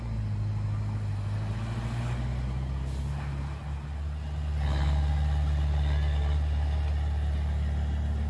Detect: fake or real real